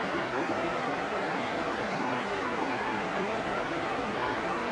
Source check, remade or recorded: remade